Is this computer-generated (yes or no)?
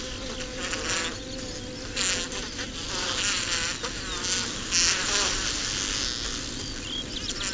no